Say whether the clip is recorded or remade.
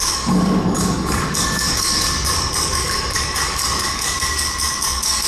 remade